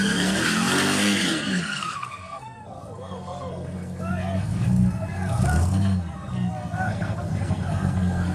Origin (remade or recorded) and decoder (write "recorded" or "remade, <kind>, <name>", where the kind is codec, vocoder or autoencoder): remade, codec, SNAC